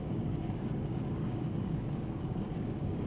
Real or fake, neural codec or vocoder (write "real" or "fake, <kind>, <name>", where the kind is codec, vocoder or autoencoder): fake, codec, DAC